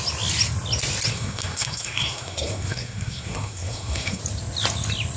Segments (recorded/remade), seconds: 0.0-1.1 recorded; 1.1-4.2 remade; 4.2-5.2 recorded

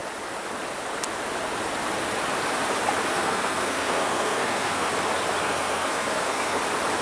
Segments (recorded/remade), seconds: 0.0-3.1 recorded; 3.1-4.9 remade; 4.9-5.4 recorded; 5.4-6.6 remade; 6.6-7.0 recorded

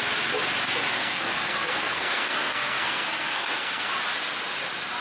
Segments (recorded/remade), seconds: 0.0-0.9 recorded; 0.9-3.9 remade; 3.9-5.0 recorded

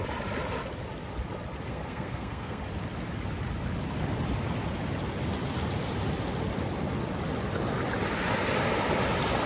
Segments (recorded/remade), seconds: 0.0-1.7 recorded; 1.7-2.6 remade; 2.6-9.5 recorded

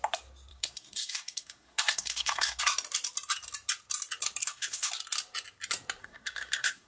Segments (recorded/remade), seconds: 0.0-0.5 recorded; 0.5-2.6 remade; 2.6-4.4 recorded; 4.4-4.9 remade; 4.9-6.0 recorded; 6.0-6.9 remade

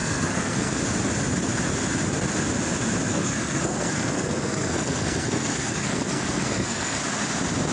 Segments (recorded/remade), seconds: 0.0-0.8 remade; 0.8-3.1 recorded; 3.1-7.0 remade; 7.0-7.7 recorded